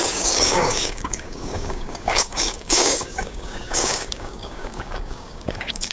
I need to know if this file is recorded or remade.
remade